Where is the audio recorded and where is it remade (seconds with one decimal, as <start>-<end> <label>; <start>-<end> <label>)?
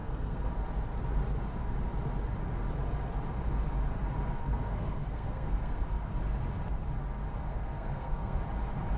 0.0-0.5 remade; 0.5-4.4 recorded; 4.4-6.1 remade; 6.1-7.4 recorded; 7.4-8.4 remade; 8.4-9.0 recorded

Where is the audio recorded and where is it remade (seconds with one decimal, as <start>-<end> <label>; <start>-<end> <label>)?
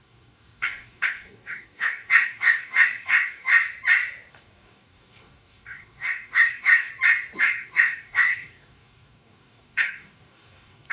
0.0-3.5 remade; 3.5-4.3 recorded; 4.3-6.9 remade; 6.9-7.4 recorded; 7.4-10.9 remade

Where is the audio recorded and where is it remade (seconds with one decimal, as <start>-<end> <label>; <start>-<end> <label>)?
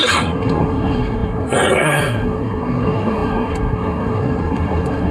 0.0-5.1 remade